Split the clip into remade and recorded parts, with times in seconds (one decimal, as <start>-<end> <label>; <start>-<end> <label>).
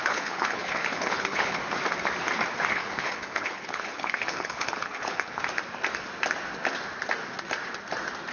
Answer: 0.0-1.6 remade; 1.6-2.7 recorded; 2.7-5.4 remade; 5.4-8.3 recorded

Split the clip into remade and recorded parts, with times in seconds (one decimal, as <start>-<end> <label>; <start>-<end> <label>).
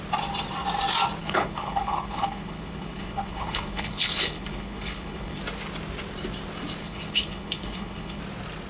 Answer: 0.0-1.2 recorded; 1.2-5.4 remade; 5.4-6.8 recorded; 6.8-8.2 remade; 8.2-8.7 recorded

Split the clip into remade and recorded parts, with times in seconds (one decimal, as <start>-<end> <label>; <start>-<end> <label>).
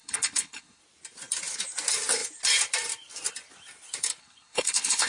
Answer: 0.0-0.8 remade; 0.8-4.2 recorded; 4.2-5.1 remade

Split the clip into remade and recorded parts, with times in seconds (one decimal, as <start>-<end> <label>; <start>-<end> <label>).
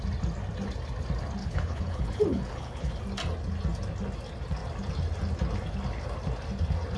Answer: 0.0-1.4 recorded; 1.4-3.0 remade; 3.0-7.0 recorded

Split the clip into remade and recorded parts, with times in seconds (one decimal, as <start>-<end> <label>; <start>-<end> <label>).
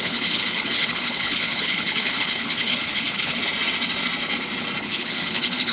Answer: 0.0-3.4 remade; 3.4-4.8 recorded; 4.8-5.7 remade